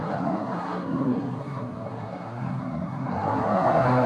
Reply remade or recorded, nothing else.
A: remade